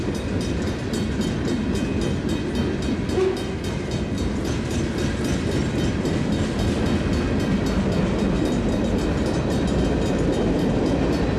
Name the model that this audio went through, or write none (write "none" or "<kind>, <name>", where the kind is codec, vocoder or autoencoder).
none